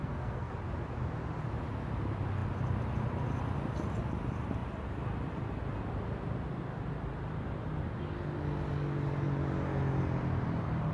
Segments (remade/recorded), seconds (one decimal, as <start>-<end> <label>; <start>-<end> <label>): 0.0-0.5 remade; 0.5-10.9 recorded